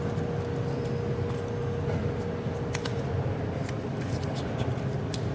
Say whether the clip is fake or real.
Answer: real